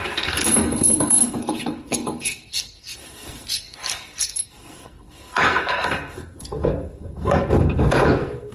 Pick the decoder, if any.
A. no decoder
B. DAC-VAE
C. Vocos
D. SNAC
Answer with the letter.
D